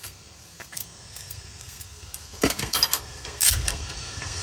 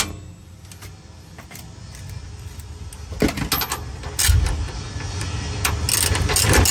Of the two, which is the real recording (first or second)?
second